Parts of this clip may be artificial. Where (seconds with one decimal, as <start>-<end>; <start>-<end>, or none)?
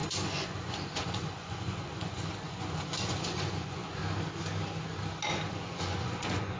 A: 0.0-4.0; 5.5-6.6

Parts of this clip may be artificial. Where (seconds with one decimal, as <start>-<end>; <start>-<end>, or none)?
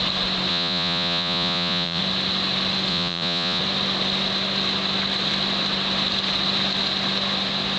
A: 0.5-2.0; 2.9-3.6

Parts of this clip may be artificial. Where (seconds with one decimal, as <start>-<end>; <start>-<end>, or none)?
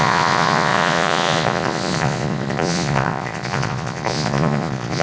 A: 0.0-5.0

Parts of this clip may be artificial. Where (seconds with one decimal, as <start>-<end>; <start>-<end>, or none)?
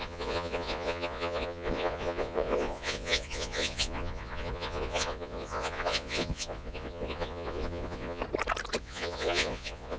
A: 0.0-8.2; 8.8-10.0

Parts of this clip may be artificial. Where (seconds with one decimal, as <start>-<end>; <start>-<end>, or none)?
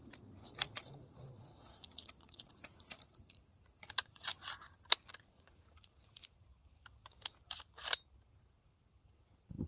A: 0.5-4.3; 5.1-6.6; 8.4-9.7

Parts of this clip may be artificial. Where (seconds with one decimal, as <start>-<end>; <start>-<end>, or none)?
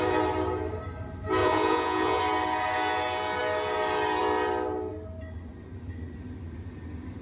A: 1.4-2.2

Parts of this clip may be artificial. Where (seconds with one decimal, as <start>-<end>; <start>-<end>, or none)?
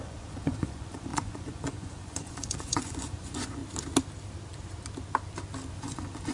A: 0.0-3.6; 5.7-6.3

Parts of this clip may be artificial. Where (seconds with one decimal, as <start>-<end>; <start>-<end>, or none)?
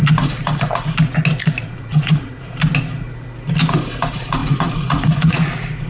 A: 1.6-2.5; 4.4-5.5